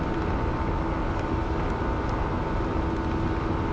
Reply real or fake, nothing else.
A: real